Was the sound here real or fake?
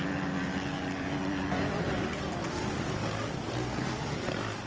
real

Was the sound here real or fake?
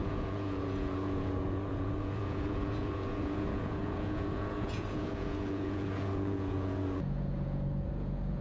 fake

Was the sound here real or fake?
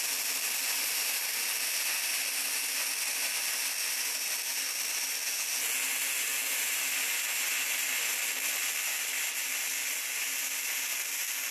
real